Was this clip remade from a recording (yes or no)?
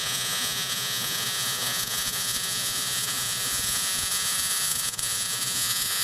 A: yes